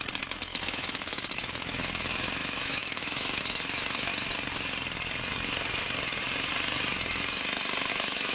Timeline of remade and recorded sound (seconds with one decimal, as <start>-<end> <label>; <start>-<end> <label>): 0.0-4.1 remade; 4.1-7.9 recorded; 7.9-8.3 remade